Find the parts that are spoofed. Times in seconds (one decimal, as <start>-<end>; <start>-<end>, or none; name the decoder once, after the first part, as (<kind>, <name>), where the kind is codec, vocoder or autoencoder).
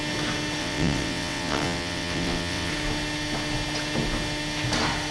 0.6-2.7 (vocoder, WaveNeXt)